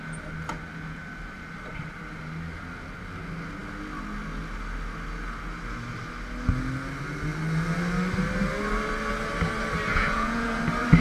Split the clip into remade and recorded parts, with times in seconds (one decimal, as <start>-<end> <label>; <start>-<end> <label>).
0.0-9.9 recorded; 9.9-10.6 remade; 10.6-11.0 recorded